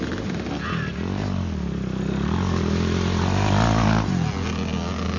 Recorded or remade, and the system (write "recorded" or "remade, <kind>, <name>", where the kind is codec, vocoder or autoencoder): recorded